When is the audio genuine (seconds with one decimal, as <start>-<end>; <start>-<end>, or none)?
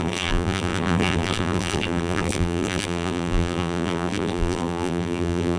none